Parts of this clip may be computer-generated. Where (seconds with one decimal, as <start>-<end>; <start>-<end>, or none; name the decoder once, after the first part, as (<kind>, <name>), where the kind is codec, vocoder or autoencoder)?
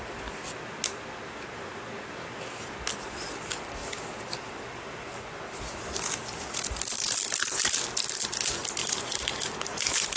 8.8-10.2 (vocoder, BigVGAN v2)